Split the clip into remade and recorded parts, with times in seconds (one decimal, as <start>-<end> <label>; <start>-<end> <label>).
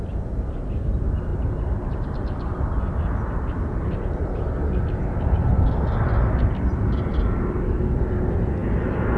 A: 0.0-9.2 recorded